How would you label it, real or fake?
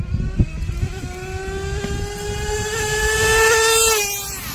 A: real